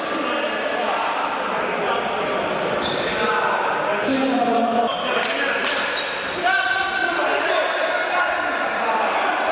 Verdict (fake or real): real